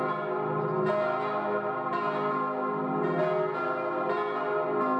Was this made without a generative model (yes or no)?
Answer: yes